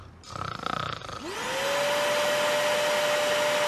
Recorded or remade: recorded